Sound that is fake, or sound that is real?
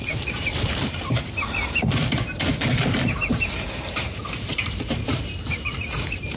fake